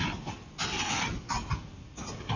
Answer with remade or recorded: recorded